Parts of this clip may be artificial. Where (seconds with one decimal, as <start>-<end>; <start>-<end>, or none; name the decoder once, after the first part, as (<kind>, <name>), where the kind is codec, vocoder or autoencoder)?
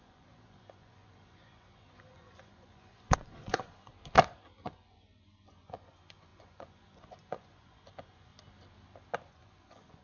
0.0-3.9 (vocoder, Vocos); 4.6-8.3; 9.3-10.0